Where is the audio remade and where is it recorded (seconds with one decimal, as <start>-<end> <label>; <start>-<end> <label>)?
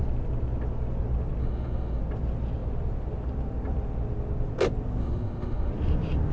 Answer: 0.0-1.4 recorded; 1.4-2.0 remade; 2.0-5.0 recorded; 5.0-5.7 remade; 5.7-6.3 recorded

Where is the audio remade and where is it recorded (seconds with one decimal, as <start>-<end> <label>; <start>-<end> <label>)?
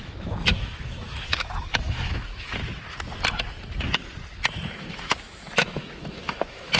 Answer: 0.0-2.6 remade; 2.6-4.8 recorded; 4.8-6.8 remade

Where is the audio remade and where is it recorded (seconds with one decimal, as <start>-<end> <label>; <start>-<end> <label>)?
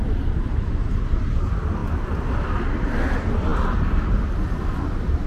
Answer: 0.0-5.3 recorded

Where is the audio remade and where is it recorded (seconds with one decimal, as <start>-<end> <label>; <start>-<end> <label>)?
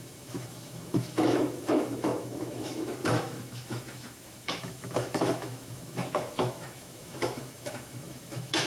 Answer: 0.0-8.7 remade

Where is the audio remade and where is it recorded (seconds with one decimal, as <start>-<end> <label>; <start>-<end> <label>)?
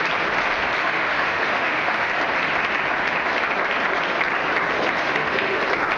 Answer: 0.0-0.8 recorded; 0.8-2.1 remade; 2.1-5.0 recorded; 5.0-5.6 remade; 5.6-6.0 recorded